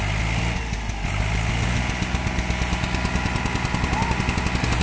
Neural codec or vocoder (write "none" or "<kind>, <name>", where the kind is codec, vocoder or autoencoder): none